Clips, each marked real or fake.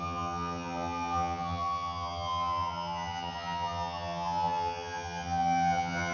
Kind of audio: fake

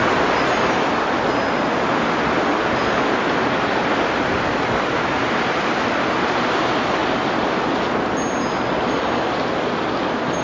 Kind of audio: real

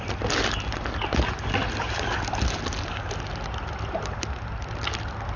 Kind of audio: real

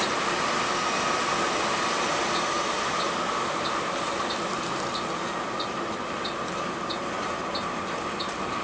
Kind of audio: real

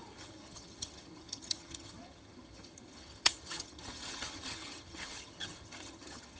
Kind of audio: fake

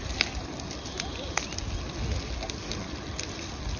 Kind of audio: real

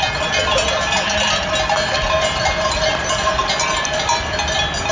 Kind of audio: real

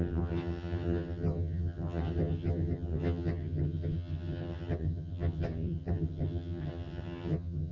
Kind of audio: fake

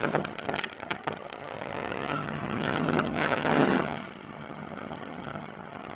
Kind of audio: fake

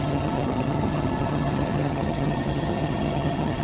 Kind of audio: fake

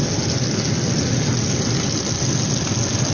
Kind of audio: real